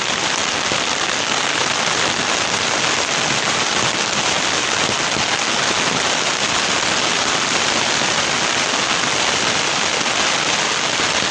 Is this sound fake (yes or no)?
no